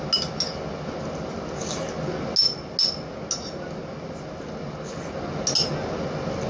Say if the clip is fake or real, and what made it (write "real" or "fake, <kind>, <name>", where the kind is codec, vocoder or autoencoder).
real